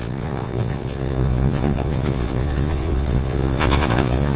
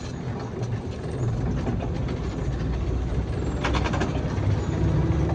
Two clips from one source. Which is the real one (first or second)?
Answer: second